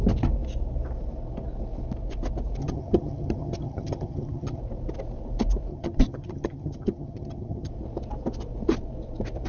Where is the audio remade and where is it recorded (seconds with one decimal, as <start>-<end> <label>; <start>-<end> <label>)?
0.0-2.6 recorded; 2.6-4.6 remade; 4.6-5.7 recorded; 5.7-7.7 remade; 7.7-9.5 recorded